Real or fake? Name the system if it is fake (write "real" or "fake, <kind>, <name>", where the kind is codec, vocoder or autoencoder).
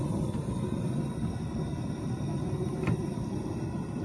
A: real